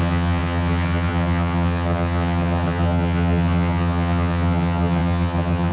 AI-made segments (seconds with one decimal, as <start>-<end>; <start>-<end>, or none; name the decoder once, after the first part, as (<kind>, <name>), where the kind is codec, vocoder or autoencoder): 0.0-5.7 (vocoder, HiFi-GAN)